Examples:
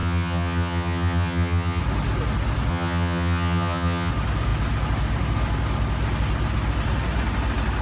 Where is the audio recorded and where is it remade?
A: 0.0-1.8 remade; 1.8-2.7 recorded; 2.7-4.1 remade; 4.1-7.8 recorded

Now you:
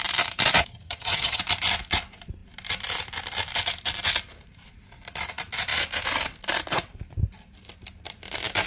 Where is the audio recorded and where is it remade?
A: 0.0-0.7 recorded; 0.7-1.4 remade; 1.4-8.7 recorded